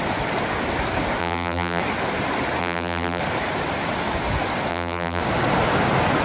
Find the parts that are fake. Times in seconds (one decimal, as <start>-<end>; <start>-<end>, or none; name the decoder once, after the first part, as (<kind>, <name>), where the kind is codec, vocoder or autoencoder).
1.2-1.8 (vocoder, BigVGAN v2); 2.6-3.2; 4.7-5.2